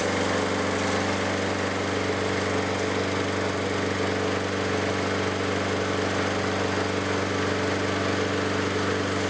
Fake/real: real